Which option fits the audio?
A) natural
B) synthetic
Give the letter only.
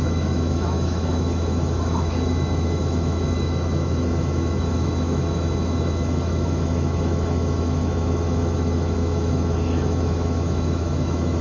B